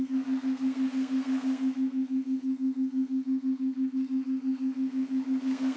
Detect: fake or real fake